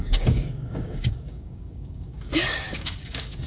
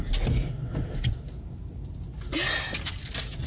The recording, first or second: second